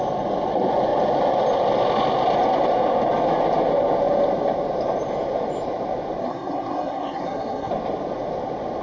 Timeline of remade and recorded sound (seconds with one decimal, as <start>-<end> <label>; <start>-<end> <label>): 0.0-6.2 recorded; 6.2-7.7 remade; 7.7-8.8 recorded